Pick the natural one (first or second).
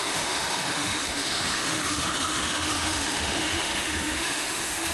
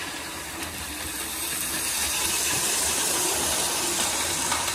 second